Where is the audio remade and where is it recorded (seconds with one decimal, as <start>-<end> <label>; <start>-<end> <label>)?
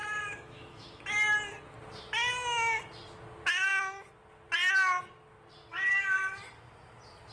0.0-1.0 remade; 1.0-5.7 recorded; 5.7-6.4 remade; 6.4-7.3 recorded